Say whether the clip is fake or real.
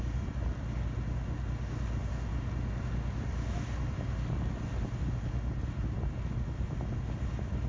real